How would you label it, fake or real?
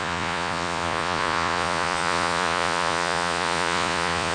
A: fake